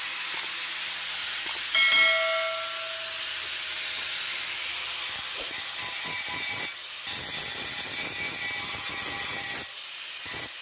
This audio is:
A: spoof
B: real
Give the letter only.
B